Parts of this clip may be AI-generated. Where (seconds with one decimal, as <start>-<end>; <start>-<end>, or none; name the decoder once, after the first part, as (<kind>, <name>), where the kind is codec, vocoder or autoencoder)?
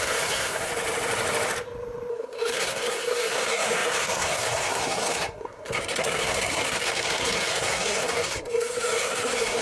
0.0-0.7 (codec, SNAC); 2.1-9.6